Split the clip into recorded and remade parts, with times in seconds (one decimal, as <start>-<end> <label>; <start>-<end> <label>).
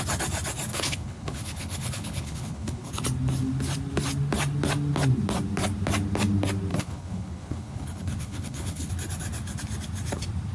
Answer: 0.0-0.7 recorded; 0.7-2.9 remade; 2.9-6.7 recorded; 6.7-8.9 remade; 8.9-10.5 recorded